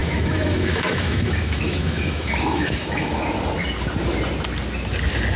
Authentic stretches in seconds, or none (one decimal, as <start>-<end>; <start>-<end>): 3.2-5.4